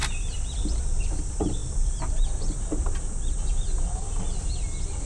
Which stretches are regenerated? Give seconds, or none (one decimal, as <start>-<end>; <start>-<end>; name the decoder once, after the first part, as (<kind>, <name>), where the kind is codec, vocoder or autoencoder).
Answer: 0.8-1.6 (vocoder, BigVGAN v2)